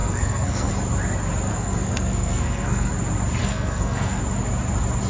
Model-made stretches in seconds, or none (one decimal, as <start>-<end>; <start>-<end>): 0.0-0.7; 1.5-2.9; 3.4-4.2